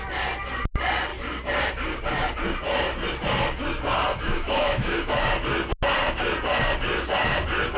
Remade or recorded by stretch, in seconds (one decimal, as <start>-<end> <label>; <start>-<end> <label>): 0.0-4.1 recorded; 4.1-5.3 remade; 5.3-7.8 recorded